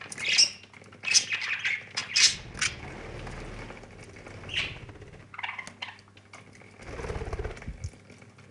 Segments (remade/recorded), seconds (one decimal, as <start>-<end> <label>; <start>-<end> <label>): 0.0-8.5 recorded